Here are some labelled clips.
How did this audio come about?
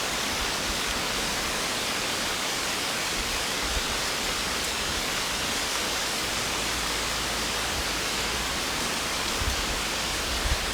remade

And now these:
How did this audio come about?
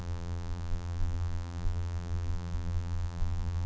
remade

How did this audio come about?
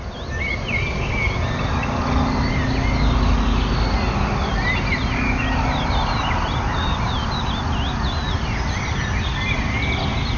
recorded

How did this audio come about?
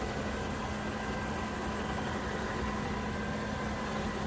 recorded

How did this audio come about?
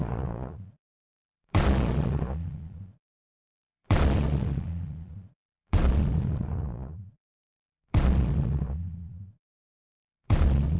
remade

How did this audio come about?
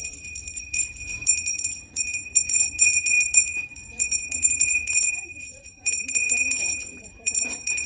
remade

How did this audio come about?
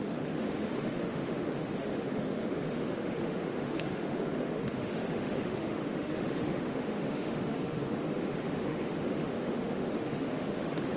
remade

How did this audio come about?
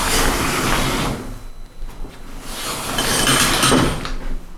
recorded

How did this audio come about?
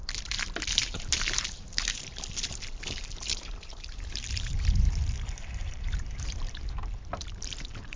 remade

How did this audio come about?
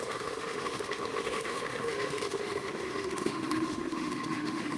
remade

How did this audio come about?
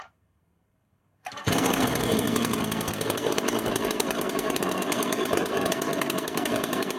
remade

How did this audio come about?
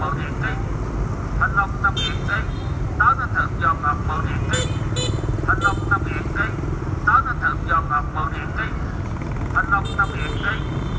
recorded